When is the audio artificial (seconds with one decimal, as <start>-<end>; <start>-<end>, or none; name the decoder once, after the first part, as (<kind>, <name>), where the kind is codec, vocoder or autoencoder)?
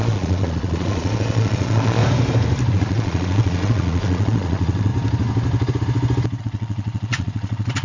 0.0-2.0 (vocoder, Vocos); 2.7-4.9; 6.4-7.8